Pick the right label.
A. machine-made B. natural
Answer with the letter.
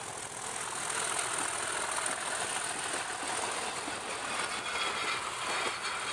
B